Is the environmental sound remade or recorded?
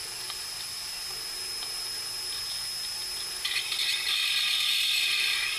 recorded